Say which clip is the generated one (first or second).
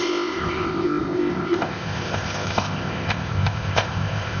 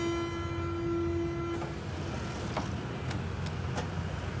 first